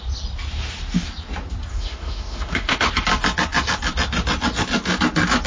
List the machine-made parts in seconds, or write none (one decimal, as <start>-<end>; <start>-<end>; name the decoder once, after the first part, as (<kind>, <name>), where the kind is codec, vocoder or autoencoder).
1.7-2.9 (autoencoder, DAC-VAE)